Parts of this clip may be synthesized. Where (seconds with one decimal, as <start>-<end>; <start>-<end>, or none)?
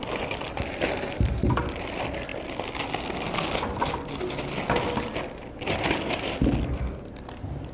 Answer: none